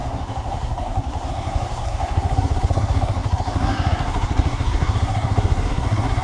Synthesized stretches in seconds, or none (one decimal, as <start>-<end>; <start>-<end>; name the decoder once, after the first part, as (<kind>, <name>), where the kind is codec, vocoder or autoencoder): 0.0-6.2 (codec, SNAC)